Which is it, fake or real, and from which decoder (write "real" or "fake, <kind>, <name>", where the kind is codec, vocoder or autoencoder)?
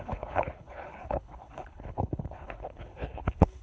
fake, codec, HILCodec